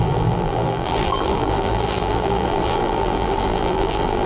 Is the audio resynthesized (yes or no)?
yes